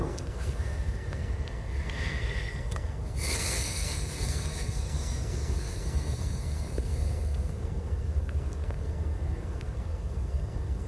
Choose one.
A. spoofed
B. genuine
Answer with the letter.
A